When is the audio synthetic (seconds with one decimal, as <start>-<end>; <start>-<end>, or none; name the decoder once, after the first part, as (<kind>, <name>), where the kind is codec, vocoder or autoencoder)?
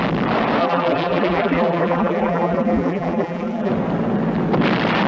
0.6-3.7 (vocoder, BigVGAN v2)